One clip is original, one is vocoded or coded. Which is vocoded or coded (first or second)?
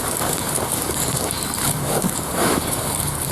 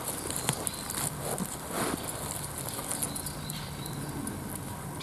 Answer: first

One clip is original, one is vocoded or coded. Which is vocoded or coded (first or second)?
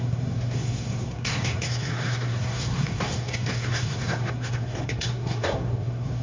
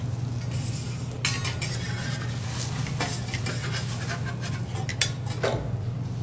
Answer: first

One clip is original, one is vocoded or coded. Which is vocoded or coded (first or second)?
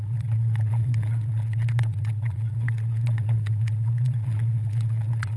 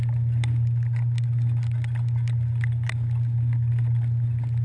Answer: first